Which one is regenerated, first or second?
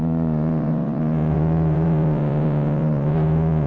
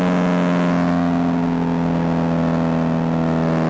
first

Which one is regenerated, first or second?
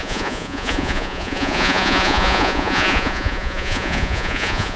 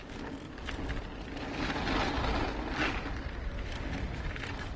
first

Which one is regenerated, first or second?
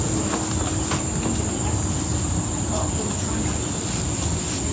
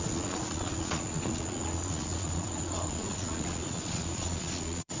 second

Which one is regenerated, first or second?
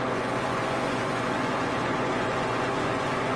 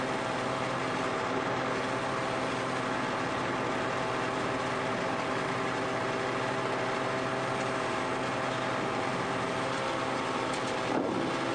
first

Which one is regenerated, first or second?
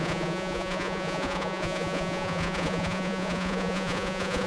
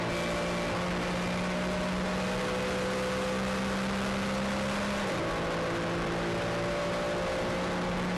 first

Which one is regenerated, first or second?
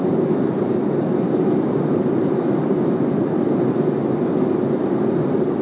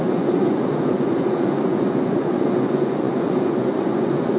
second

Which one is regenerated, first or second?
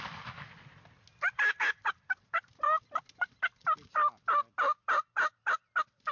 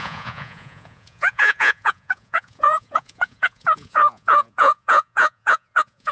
second